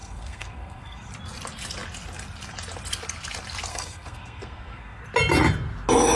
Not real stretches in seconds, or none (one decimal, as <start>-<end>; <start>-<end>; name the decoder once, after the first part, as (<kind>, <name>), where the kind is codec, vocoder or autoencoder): 0.0-1.1 (codec, SNAC); 3.7-5.0